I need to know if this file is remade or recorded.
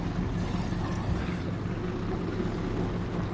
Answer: recorded